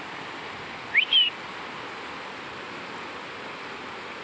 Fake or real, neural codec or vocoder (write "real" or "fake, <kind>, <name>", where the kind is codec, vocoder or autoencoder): real